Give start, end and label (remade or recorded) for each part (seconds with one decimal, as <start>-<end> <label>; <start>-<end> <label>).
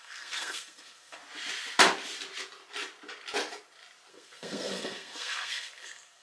0.0-1.2 remade; 1.2-4.1 recorded; 4.1-6.2 remade